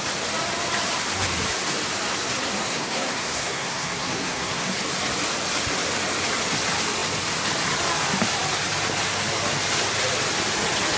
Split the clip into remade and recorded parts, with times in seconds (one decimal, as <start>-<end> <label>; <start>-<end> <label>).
0.0-2.6 recorded; 2.6-4.8 remade; 4.8-11.0 recorded